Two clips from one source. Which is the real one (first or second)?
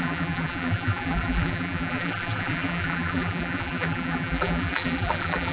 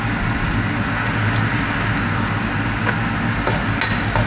second